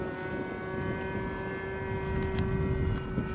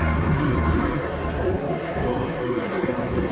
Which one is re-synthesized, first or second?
second